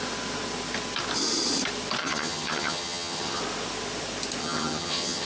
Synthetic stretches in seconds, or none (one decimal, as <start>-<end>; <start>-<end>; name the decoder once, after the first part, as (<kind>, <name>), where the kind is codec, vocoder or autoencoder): 2.0-3.4 (vocoder, HiFi-GAN); 4.4-5.3